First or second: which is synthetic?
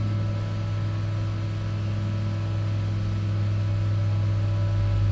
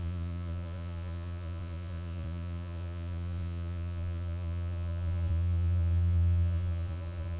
second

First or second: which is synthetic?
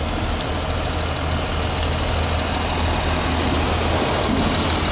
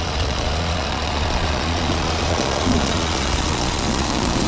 second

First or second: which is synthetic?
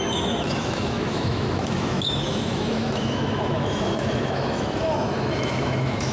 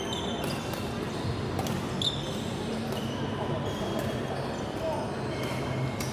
first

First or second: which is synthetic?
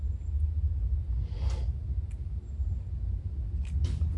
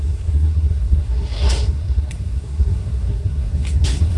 second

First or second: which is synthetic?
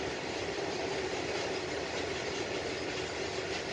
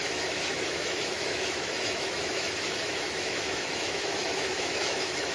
second